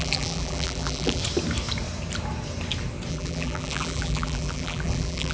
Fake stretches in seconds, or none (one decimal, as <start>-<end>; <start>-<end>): 0.0-1.2; 3.1-5.3